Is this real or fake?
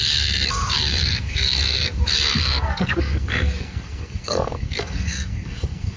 fake